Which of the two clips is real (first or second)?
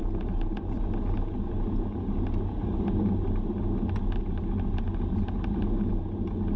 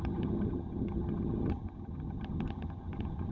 first